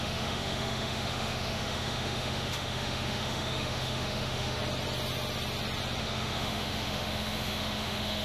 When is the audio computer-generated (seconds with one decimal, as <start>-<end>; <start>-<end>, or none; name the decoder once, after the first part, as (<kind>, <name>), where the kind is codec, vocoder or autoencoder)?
0.0-4.6 (autoencoder, DAC-VAE); 6.0-8.2